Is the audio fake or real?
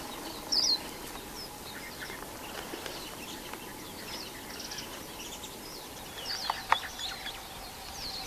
real